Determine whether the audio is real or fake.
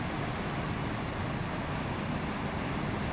real